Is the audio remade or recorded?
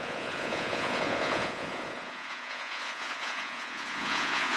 remade